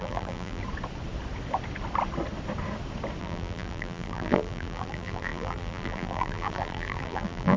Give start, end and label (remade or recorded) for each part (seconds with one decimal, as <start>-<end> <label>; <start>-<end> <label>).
0.0-0.6 remade; 0.6-3.2 recorded; 3.2-7.6 remade